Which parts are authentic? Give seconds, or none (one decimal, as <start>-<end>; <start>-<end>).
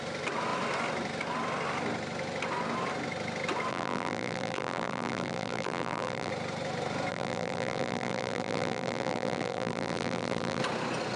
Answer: 0.0-3.7; 6.3-7.1; 10.6-11.2